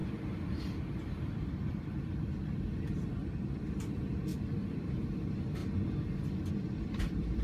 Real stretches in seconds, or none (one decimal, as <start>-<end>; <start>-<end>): 0.0-1.2; 5.6-6.5